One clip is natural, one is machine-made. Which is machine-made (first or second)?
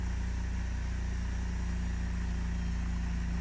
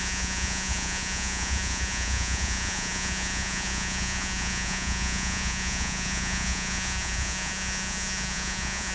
second